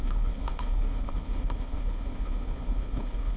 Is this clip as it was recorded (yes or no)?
no